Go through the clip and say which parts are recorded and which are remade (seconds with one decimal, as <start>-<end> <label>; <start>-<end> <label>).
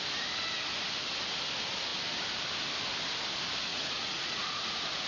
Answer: 0.0-3.7 recorded; 3.7-5.1 remade